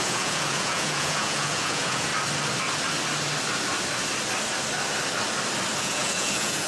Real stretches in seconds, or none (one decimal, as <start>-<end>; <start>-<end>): 2.1-5.8